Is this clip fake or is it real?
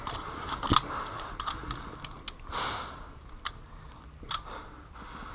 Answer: real